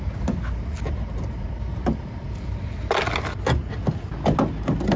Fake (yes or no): no